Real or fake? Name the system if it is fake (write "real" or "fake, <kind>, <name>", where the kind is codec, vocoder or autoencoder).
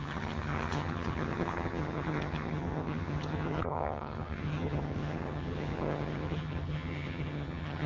fake, vocoder, HiFi-GAN